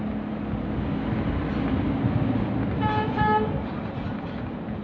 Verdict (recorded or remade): recorded